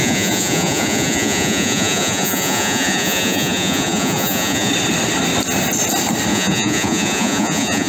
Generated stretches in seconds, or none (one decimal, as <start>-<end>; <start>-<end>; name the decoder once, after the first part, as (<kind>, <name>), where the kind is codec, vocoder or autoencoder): 0.0-4.7 (vocoder, Vocos); 6.3-7.9